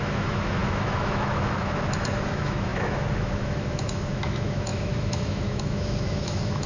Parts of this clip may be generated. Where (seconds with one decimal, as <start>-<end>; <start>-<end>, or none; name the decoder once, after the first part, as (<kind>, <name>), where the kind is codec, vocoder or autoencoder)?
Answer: 0.0-6.7 (autoencoder, DAC-VAE)